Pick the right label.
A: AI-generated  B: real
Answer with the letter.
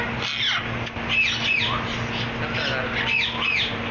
B